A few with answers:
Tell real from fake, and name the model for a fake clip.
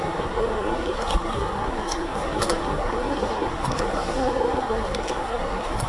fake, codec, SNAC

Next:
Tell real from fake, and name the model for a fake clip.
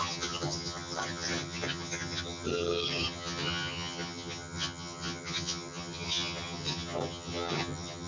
fake, vocoder, HiFi-GAN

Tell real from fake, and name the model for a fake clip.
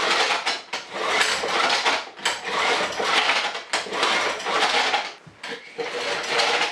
real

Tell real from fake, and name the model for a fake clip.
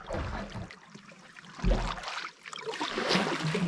real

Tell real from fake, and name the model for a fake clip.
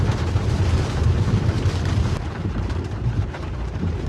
fake, vocoder, BigVGAN v2